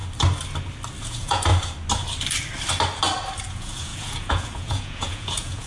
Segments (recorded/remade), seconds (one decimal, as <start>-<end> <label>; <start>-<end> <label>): 0.0-1.0 recorded; 1.0-1.5 remade; 1.5-3.5 recorded; 3.5-5.7 remade